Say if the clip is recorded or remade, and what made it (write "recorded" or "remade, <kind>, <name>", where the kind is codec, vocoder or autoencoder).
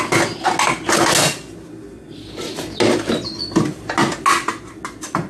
recorded